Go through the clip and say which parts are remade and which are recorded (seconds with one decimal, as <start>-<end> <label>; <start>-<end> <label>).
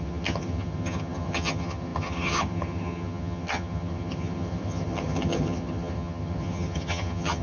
0.0-7.4 remade